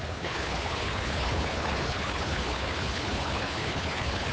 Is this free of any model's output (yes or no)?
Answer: no